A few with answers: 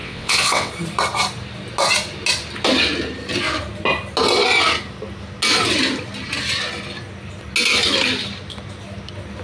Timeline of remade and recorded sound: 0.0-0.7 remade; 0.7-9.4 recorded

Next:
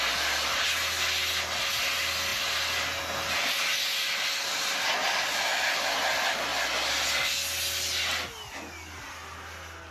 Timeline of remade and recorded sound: 0.0-9.9 recorded

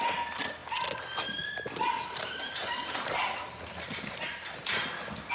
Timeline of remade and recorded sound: 0.0-5.3 recorded

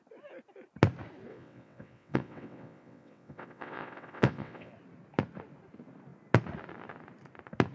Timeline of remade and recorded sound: 0.0-1.3 recorded; 1.3-4.7 remade; 4.7-7.7 recorded